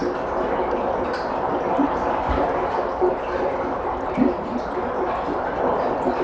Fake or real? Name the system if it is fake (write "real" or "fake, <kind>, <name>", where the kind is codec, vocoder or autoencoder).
real